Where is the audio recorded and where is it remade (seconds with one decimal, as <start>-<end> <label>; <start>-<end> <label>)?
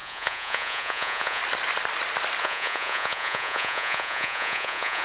0.0-1.4 remade; 1.4-2.4 recorded; 2.4-5.0 remade